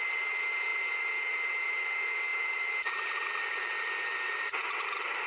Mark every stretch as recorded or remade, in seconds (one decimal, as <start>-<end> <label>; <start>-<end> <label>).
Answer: 0.0-5.3 recorded

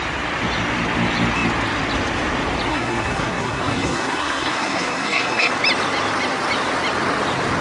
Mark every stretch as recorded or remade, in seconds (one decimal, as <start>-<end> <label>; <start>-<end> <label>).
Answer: 0.0-2.7 recorded; 2.7-5.5 remade; 5.5-7.6 recorded

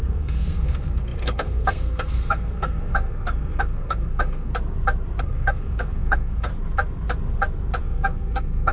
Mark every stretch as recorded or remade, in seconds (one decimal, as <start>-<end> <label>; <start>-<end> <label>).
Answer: 0.0-4.5 remade; 4.5-5.2 recorded; 5.2-6.5 remade; 6.5-7.8 recorded; 7.8-8.7 remade

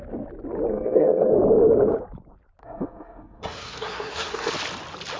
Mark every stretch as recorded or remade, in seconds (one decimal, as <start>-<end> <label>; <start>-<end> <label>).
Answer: 0.0-0.7 recorded; 0.7-1.3 remade; 1.3-2.6 recorded; 2.6-4.5 remade; 4.5-5.2 recorded